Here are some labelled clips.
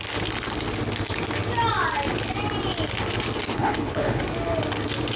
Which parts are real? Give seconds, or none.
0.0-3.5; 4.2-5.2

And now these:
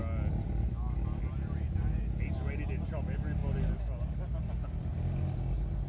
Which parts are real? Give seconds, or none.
0.0-5.9

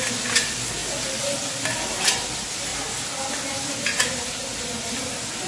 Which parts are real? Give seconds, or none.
0.0-5.5